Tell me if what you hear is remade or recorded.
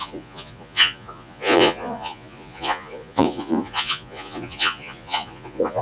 remade